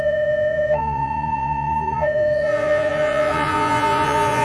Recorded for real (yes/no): no